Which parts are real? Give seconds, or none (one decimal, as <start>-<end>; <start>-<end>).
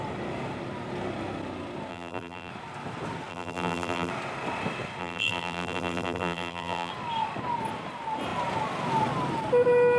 0.0-1.9; 2.5-3.3; 4.1-5.0; 6.9-10.0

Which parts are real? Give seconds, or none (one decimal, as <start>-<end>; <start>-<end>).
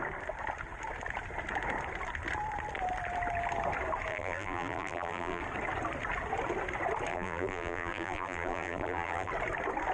0.0-4.1; 5.4-7.1; 9.3-9.9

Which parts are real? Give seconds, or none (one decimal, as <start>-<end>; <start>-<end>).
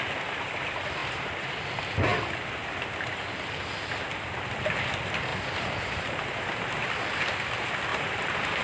0.0-1.0; 1.6-5.3; 6.7-7.9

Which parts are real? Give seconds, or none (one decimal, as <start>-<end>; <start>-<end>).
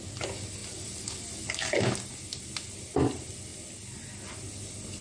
0.0-5.0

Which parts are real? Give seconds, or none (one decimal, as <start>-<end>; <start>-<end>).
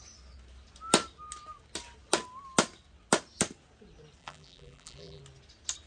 0.0-4.2; 5.2-5.9